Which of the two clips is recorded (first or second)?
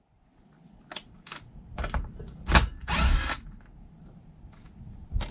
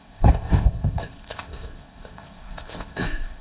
first